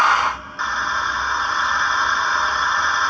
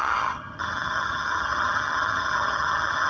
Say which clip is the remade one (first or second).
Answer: second